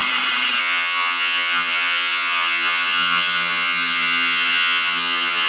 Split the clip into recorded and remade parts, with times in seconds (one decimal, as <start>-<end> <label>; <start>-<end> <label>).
0.0-0.6 recorded; 0.6-5.5 remade